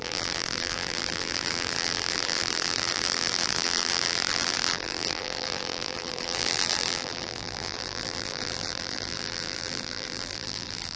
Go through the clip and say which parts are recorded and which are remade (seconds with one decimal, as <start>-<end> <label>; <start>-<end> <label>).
0.0-11.0 remade